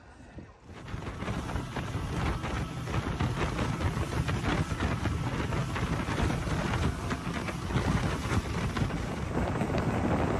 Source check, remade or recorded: recorded